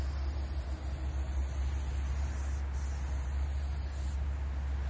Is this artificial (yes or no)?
no